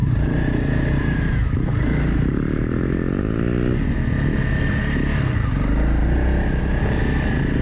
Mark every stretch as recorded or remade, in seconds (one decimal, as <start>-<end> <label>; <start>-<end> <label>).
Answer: 0.0-3.4 remade; 3.4-7.6 recorded